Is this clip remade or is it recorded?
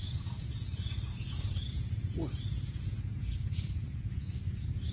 remade